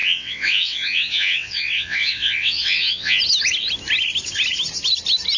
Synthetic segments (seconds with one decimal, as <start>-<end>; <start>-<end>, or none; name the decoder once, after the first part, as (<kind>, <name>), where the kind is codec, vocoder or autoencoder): 0.0-3.2 (vocoder, WaveNeXt)